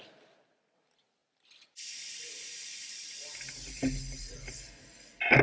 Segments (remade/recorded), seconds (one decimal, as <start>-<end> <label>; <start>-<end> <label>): 0.0-5.4 recorded